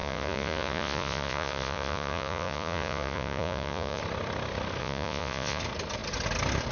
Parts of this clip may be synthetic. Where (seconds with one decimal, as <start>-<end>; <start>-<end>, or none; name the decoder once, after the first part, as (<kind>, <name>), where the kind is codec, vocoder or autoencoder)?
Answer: 0.0-4.0 (vocoder, Vocos); 4.8-5.6